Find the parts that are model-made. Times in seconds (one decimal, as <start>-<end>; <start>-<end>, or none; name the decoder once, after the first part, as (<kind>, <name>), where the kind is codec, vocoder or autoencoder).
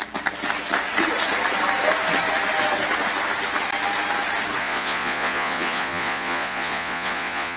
4.6-7.6 (vocoder, Vocos)